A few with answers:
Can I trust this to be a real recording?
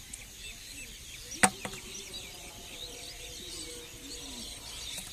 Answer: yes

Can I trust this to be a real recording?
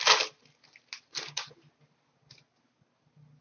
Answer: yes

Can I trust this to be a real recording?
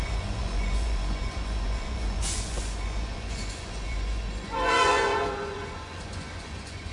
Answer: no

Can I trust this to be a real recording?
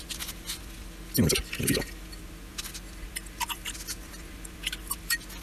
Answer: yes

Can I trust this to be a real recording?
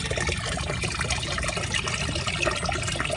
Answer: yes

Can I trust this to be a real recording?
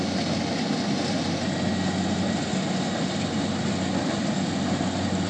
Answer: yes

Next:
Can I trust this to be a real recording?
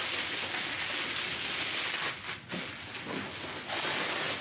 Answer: yes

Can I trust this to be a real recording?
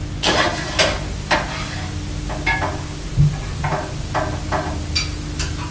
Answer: yes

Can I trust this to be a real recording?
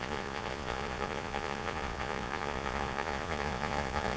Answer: no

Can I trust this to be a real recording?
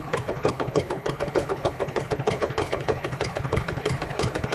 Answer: no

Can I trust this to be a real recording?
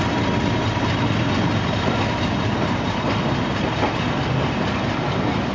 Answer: yes